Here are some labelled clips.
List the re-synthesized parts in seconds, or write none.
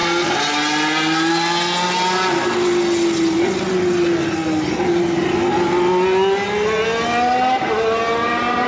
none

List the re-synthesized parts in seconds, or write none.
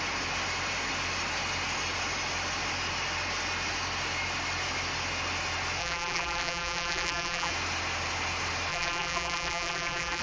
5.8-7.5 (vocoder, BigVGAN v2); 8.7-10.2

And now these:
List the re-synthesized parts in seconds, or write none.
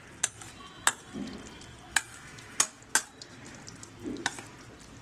1.9-2.8 (autoencoder, DAC-VAE)